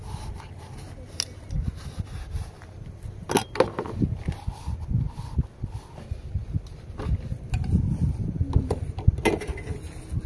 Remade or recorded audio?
recorded